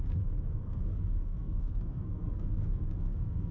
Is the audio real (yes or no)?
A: no